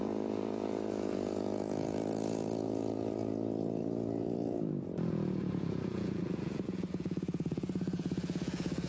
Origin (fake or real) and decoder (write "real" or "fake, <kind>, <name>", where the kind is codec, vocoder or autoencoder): fake, vocoder, Vocos